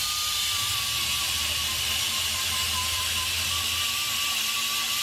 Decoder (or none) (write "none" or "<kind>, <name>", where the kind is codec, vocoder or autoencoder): none